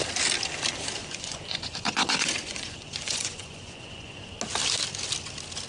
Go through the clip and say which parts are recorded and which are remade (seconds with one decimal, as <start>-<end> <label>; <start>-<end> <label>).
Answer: 0.0-1.0 recorded; 1.0-4.4 remade; 4.4-5.7 recorded